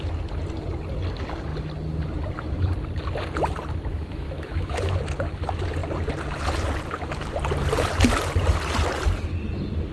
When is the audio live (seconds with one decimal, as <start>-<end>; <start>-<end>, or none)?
0.0-3.9; 5.0-9.9